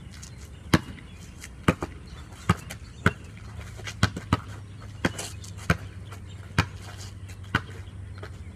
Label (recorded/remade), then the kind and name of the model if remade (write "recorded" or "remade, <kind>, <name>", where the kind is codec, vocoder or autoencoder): recorded